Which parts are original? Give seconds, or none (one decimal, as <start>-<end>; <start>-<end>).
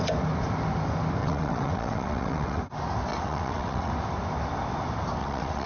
0.0-1.2; 2.6-3.1; 3.9-5.2